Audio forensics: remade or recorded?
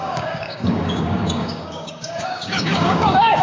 remade